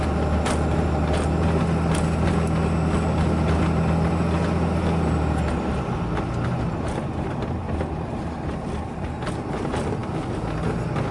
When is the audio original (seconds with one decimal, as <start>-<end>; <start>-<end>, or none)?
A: 0.0-11.1